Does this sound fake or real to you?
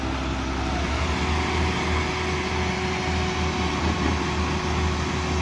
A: real